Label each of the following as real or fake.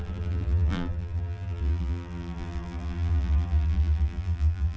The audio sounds fake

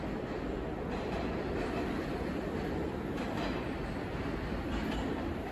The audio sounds real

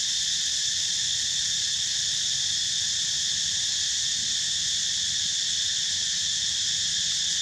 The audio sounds real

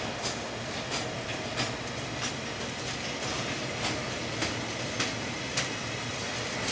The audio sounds real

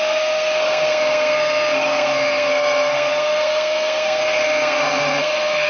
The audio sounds fake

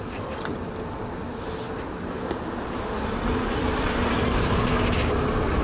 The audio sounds fake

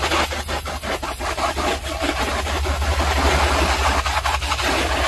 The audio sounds real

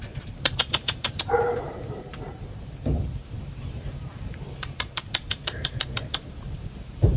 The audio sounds fake